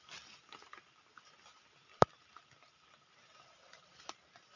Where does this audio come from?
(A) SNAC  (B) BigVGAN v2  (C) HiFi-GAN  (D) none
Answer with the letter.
D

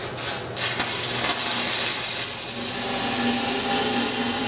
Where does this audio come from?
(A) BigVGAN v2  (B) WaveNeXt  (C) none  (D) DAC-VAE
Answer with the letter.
C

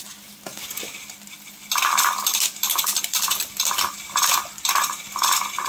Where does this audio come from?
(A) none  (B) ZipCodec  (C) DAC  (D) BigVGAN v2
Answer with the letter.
A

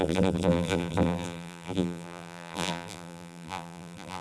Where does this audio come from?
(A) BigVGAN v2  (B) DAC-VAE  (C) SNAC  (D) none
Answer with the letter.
A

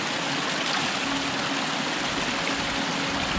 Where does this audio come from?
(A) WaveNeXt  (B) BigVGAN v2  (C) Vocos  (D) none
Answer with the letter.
D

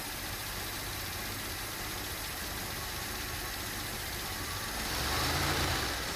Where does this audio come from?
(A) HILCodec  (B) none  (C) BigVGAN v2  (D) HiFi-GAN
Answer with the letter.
C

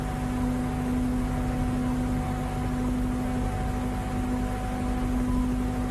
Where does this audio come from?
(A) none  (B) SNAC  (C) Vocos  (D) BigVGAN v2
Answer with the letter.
A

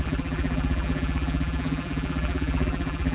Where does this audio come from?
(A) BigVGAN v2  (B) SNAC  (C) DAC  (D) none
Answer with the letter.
A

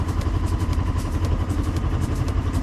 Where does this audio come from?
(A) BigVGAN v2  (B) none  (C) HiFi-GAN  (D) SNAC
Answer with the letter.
A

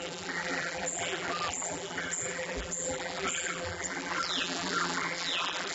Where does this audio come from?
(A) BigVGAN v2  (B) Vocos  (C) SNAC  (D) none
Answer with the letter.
A